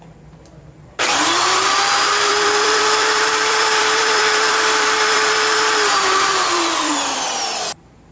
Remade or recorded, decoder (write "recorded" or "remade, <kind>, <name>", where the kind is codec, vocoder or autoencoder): remade, vocoder, BigVGAN v2